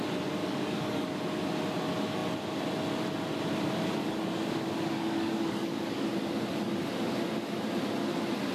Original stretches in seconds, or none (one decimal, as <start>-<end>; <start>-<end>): 0.0-0.4; 1.1-4.0; 6.1-8.5